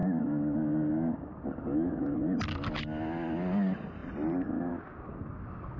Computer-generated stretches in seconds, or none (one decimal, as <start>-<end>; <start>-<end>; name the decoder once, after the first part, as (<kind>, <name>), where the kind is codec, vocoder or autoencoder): none